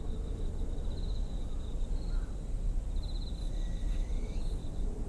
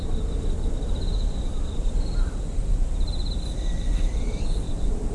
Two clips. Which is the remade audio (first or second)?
second